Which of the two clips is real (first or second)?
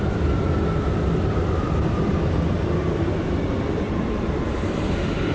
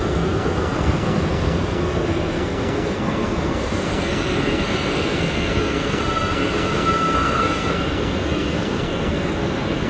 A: first